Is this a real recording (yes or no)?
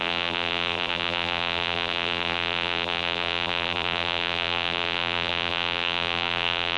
no